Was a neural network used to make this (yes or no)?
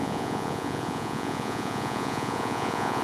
yes